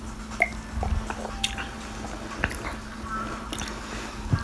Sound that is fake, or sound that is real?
real